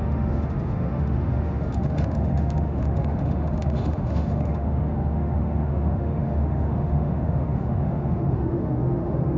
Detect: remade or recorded remade